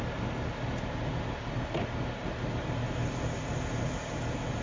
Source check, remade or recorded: recorded